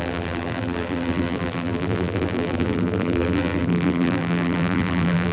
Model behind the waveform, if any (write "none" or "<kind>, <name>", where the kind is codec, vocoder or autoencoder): vocoder, BigVGAN v2